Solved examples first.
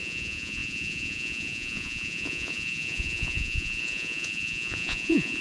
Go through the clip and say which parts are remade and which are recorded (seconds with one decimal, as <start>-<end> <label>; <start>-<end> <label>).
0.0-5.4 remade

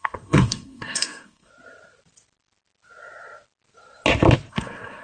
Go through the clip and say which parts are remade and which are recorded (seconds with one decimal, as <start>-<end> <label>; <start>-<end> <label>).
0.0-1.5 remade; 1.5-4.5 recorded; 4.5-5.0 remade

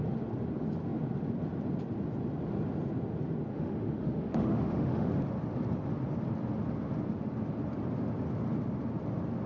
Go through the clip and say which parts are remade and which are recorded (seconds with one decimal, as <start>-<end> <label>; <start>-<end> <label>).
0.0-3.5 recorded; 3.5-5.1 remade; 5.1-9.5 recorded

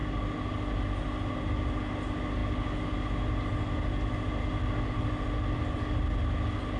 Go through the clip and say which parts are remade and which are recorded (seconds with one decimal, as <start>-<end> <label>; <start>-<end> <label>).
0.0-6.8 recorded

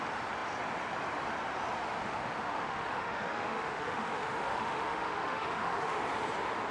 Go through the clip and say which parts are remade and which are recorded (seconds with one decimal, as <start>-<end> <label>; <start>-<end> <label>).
0.0-2.0 recorded; 2.0-6.0 remade; 6.0-6.7 recorded